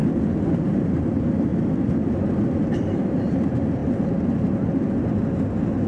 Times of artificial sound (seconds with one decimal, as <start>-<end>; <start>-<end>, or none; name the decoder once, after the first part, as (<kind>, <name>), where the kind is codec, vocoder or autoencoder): 0.6-1.5 (vocoder, BigVGAN v2); 2.6-3.8; 5.4-5.9